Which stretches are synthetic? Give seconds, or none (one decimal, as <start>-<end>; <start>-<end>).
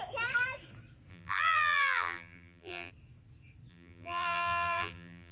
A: 1.1-2.9; 3.7-5.3